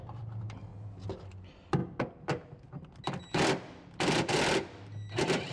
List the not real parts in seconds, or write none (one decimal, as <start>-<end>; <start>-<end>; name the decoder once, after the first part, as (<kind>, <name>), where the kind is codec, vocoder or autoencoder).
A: 0.0-0.7 (vocoder, BigVGAN v2); 1.2-1.8; 4.2-5.5